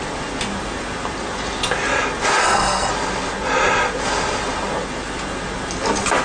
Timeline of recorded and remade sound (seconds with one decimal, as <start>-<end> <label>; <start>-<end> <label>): 0.0-2.4 recorded; 2.4-2.9 remade; 2.9-6.2 recorded